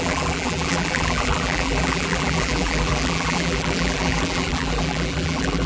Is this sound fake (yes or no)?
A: yes